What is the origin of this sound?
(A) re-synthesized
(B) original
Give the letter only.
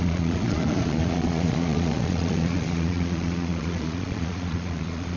A